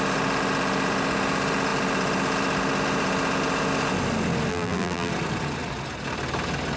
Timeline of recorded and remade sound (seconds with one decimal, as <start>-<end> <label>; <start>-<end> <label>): 0.0-4.5 recorded; 4.5-5.1 remade; 5.1-6.8 recorded